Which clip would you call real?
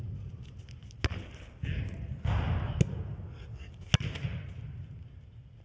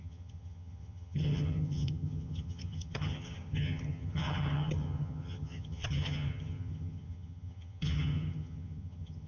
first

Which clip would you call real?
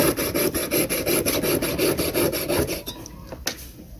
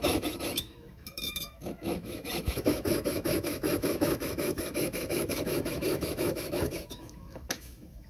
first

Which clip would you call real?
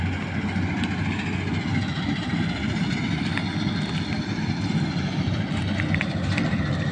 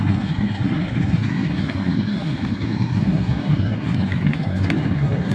first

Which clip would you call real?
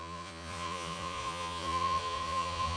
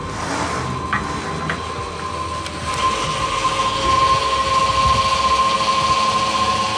second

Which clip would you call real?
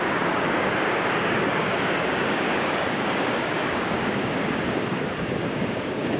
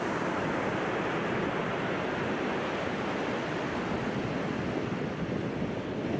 second